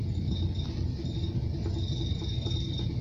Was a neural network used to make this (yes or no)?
no